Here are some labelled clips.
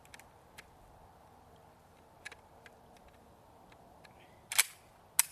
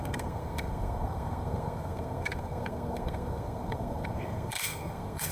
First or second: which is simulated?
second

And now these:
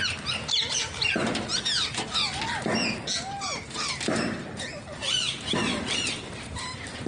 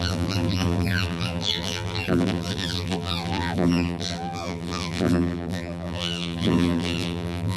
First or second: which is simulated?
second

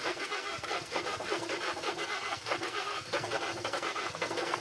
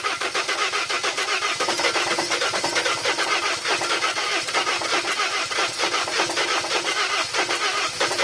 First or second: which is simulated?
first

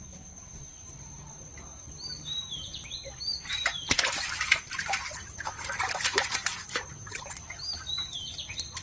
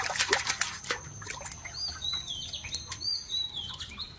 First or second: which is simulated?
first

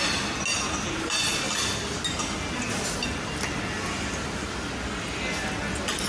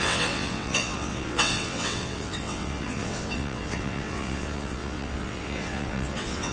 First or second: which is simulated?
second